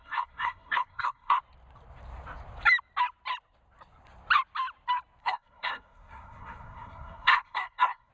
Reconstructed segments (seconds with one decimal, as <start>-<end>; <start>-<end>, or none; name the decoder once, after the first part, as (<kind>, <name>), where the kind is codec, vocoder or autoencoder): 0.0-1.4 (codec, SNAC); 5.2-8.1